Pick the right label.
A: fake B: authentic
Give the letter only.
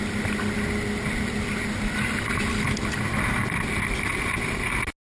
B